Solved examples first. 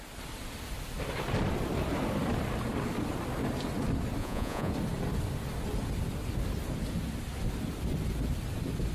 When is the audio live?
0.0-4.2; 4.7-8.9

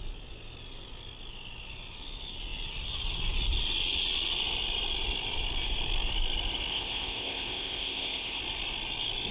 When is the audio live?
0.0-6.7; 8.4-9.3

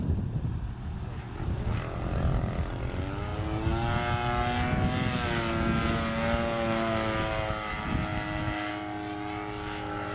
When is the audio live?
0.0-10.1